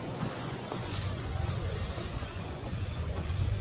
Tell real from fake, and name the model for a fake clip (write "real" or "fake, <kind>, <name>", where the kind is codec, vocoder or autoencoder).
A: fake, vocoder, Vocos